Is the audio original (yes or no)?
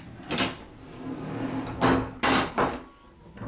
yes